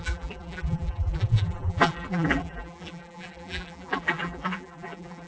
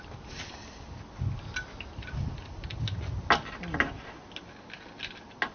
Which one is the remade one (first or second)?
first